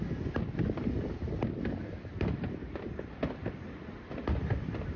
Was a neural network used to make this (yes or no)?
no